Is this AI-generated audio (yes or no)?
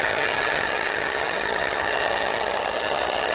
yes